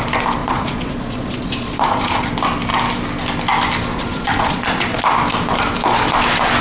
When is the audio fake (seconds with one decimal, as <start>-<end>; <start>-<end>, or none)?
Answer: 0.4-2.3; 3.9-5.0